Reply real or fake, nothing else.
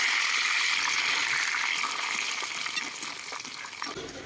real